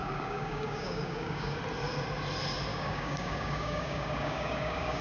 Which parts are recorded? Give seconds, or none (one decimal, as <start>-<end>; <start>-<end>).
1.6-2.7